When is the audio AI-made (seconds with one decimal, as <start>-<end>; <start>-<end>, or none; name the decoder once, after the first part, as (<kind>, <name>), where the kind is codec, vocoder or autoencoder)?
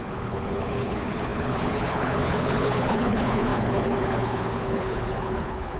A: 0.0-5.8 (codec, HILCodec)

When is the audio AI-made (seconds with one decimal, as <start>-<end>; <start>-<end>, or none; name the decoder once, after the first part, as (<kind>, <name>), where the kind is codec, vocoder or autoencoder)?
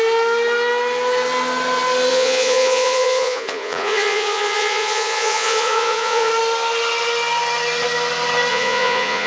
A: 2.1-6.3 (vocoder, Vocos); 8.5-9.3